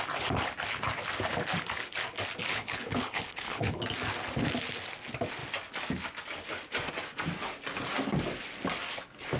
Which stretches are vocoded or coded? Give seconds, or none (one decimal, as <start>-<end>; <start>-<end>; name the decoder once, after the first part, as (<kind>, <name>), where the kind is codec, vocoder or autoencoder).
2.5-3.8 (codec, HILCodec)